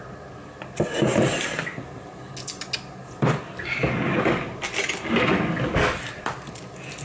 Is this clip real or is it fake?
real